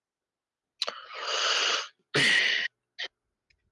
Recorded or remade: recorded